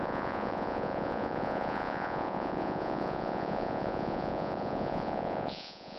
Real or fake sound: fake